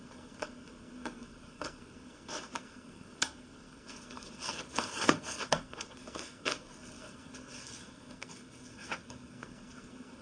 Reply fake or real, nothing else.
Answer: fake